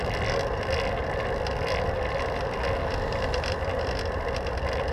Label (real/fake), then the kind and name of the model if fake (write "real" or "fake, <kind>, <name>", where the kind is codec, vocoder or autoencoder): real